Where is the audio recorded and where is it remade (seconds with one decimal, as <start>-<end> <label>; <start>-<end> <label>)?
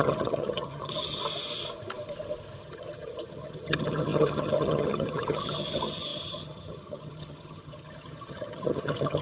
0.0-1.2 remade; 1.2-2.6 recorded; 2.6-9.2 remade